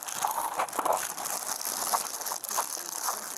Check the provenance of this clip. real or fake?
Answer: real